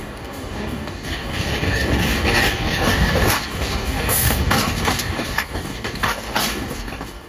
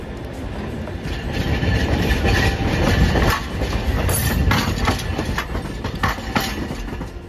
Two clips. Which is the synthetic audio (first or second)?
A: first